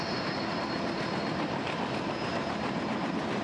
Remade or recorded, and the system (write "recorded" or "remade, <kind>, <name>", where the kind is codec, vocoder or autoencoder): recorded